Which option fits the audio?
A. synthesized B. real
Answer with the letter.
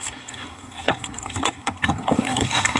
A